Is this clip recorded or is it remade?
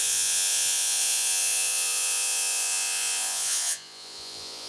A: remade